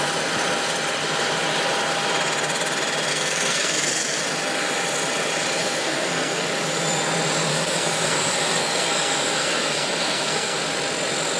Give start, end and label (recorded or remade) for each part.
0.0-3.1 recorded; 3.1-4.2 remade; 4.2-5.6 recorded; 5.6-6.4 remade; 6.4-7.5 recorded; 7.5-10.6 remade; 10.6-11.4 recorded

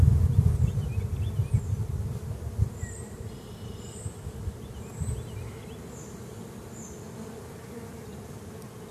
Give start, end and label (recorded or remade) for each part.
0.0-8.9 recorded

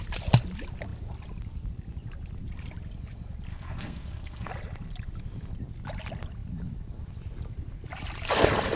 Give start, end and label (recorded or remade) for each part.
0.0-3.5 recorded; 3.5-4.5 remade; 4.5-8.8 recorded

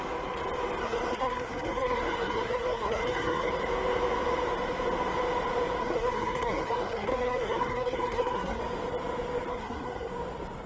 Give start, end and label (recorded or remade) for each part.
0.0-0.8 recorded; 0.8-3.5 remade; 3.5-5.8 recorded; 5.8-8.6 remade; 8.6-9.5 recorded; 9.5-10.1 remade; 10.1-10.7 recorded